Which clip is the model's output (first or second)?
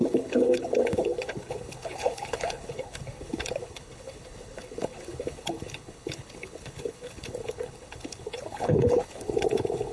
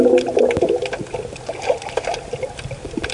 first